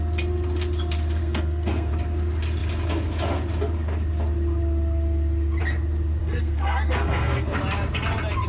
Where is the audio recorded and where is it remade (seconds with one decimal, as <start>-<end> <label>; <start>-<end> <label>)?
0.0-1.2 recorded; 1.2-1.9 remade; 1.9-6.2 recorded; 6.2-7.6 remade; 7.6-8.5 recorded